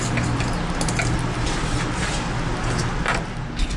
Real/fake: real